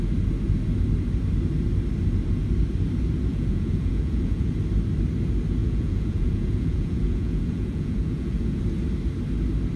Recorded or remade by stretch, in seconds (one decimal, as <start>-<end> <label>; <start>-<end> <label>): 0.0-3.3 recorded; 3.3-4.5 remade; 4.5-5.6 recorded; 5.6-8.6 remade; 8.6-9.8 recorded